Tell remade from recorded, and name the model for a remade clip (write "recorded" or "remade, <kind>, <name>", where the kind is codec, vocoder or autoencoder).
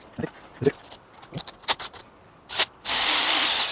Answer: recorded